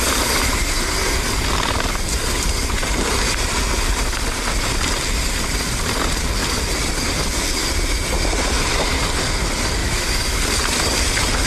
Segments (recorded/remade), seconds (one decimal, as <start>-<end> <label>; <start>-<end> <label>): 0.0-9.8 recorded; 9.8-10.4 remade; 10.4-11.5 recorded